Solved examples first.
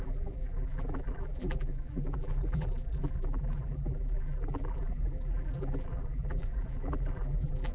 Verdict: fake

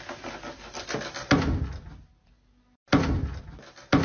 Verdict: real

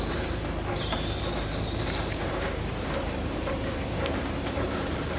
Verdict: fake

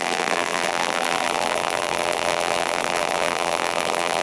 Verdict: fake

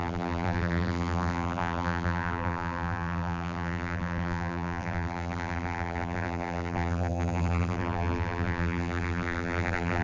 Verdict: fake